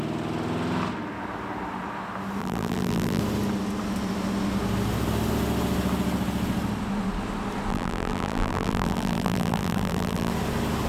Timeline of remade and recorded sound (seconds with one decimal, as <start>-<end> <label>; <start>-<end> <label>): 0.0-2.4 recorded; 2.4-3.2 remade; 3.2-7.7 recorded; 7.7-10.3 remade; 10.3-10.9 recorded